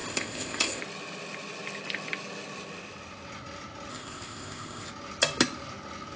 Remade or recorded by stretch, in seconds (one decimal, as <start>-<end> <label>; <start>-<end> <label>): 0.0-0.8 remade; 0.8-3.9 recorded; 3.9-4.9 remade; 4.9-6.2 recorded